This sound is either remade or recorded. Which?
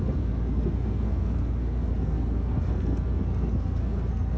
remade